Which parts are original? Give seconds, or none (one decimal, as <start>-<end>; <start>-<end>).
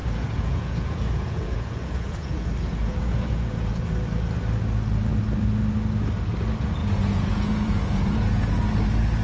3.8-6.8; 8.6-9.2